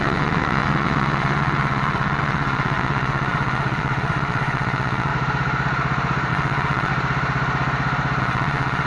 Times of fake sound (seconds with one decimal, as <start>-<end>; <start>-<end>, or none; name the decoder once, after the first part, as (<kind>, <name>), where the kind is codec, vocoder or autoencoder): 0.0-5.1 (vocoder, WaveNeXt); 6.3-6.9; 8.2-8.9